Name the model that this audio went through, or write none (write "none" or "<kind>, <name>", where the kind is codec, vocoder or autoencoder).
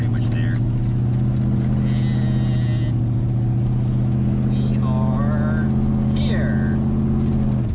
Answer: none